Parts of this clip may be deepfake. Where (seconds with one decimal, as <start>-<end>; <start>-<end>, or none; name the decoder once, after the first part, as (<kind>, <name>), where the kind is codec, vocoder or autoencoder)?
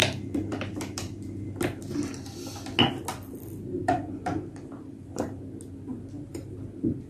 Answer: 0.0-1.2 (vocoder, BigVGAN v2); 3.8-5.4